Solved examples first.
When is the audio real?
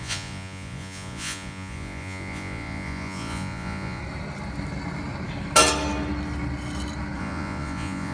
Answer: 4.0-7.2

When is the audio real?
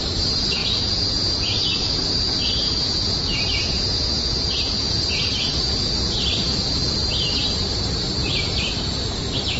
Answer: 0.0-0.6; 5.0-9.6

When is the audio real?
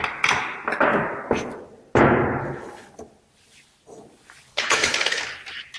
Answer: 0.0-2.4; 2.9-4.5; 5.2-5.8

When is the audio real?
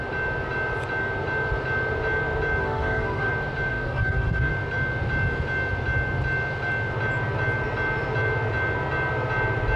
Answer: 0.0-2.6; 3.3-3.7; 4.5-9.8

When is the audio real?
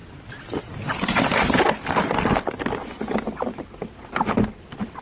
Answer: 0.0-5.0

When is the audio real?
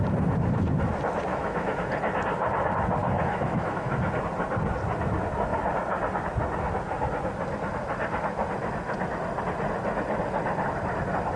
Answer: 0.0-1.3; 1.9-3.0; 4.1-11.4